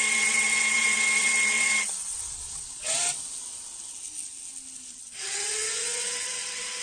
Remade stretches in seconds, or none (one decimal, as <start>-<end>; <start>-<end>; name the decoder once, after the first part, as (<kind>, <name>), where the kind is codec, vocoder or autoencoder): 0.0-3.1 (vocoder, WaveNeXt); 5.0-6.8